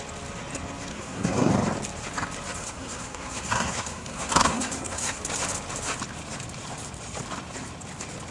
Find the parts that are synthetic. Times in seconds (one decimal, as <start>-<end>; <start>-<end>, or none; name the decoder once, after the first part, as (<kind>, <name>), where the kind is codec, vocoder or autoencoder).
0.9-1.5 (codec, SNAC); 2.6-5.2